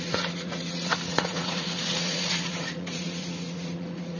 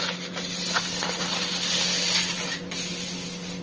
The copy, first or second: first